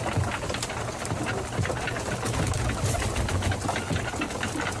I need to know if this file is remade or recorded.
recorded